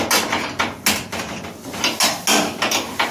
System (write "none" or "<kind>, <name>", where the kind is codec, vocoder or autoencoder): none